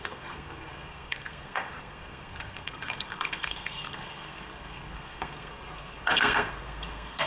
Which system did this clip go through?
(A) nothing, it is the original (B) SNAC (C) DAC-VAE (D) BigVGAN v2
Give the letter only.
B